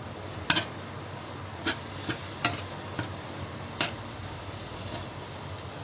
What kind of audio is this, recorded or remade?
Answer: recorded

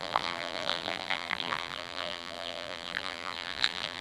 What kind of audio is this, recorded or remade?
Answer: remade